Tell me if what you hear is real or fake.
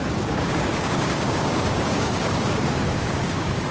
fake